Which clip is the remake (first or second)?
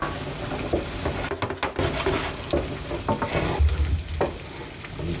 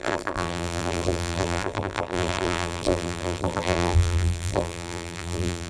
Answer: second